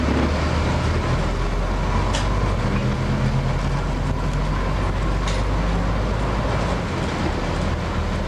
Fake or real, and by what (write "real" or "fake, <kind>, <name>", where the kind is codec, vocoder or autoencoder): real